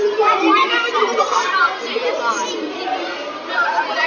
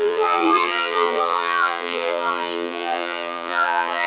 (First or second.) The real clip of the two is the first